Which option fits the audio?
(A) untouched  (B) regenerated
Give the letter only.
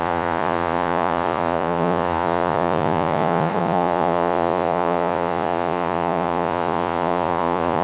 B